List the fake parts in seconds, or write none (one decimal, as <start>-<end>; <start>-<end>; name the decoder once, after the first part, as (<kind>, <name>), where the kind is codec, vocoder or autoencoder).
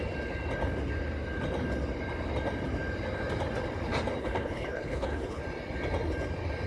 4.2-5.4 (codec, HILCodec)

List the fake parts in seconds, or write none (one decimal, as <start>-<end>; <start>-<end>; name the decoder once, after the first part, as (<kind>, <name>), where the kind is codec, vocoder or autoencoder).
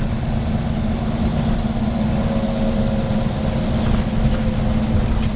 none